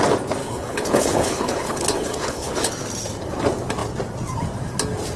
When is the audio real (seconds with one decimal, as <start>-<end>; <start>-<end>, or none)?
0.0-0.4; 2.7-5.2